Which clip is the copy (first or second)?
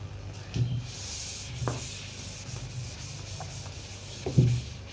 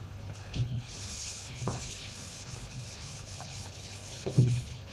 second